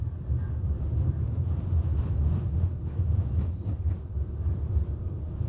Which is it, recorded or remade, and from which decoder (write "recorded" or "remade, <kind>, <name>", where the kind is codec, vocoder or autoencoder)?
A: recorded